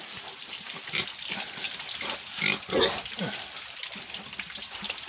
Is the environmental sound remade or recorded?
recorded